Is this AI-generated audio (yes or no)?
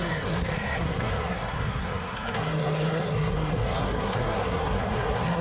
yes